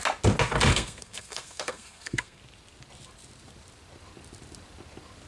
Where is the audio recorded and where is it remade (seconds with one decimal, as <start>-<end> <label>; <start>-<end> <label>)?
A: 0.0-0.7 recorded; 0.7-2.4 remade; 2.4-5.3 recorded